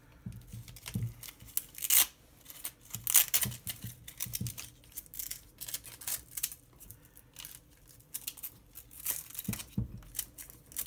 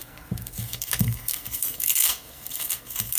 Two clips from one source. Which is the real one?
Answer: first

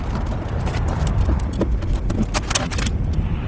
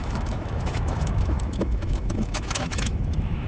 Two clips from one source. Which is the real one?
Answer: first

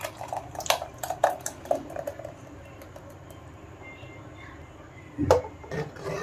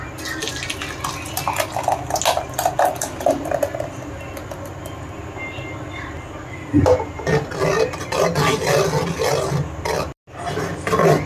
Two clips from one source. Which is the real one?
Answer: second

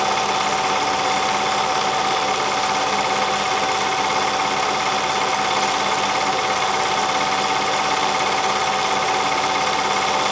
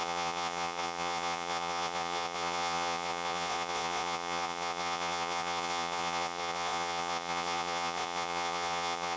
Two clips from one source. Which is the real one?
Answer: first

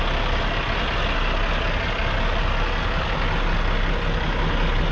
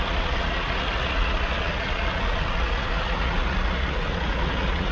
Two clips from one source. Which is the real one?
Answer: first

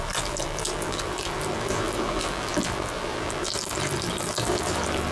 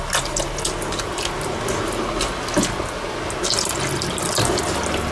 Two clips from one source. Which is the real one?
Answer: second